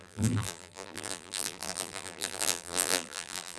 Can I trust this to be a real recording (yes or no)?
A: no